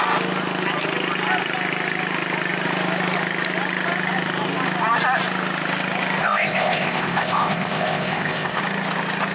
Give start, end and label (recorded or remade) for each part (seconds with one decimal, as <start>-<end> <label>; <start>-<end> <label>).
0.0-6.2 recorded; 6.2-8.6 remade; 8.6-9.3 recorded